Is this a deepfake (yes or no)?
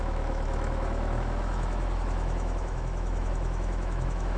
yes